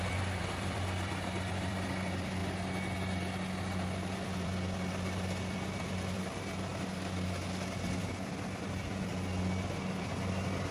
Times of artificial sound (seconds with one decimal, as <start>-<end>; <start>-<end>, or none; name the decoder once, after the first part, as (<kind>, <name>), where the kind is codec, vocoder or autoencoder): 0.0-2.4 (vocoder, BigVGAN v2); 3.6-6.7; 8.0-9.1; 10.0-10.7